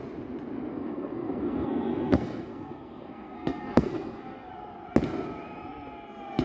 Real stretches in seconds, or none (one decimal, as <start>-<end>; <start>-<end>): 0.0-0.7; 4.5-6.4

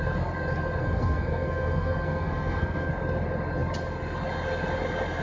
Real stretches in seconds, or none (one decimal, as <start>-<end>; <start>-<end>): 0.0-0.8; 2.9-5.2

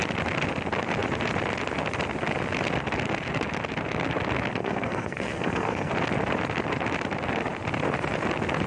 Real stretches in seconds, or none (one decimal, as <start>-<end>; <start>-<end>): 0.0-4.6; 5.9-8.7

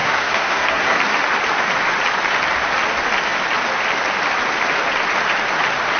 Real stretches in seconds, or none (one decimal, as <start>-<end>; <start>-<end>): 1.0-6.0

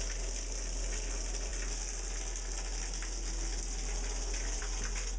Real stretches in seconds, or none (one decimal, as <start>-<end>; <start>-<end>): 0.0-5.2

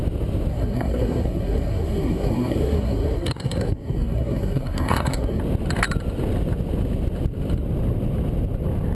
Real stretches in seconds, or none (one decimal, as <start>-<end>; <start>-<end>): 0.0-0.5; 5.4-8.9

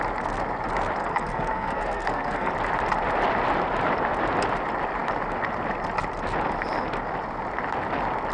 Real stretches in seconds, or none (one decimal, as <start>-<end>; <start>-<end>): 0.0-1.0; 2.5-8.3